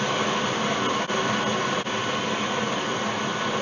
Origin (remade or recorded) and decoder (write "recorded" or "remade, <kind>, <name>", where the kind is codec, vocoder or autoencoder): recorded